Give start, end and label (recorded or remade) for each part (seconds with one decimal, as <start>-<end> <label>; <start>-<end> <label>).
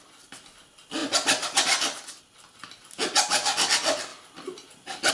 0.0-5.1 recorded